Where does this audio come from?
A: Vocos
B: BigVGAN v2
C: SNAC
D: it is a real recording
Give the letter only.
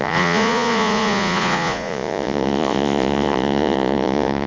A